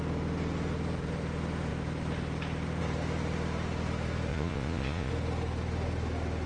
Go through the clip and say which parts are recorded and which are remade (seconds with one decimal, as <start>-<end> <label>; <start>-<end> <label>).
0.0-4.3 recorded; 4.3-5.1 remade; 5.1-6.5 recorded